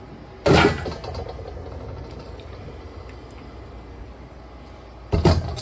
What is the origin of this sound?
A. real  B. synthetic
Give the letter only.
A